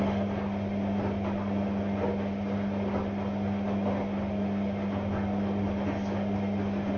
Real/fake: real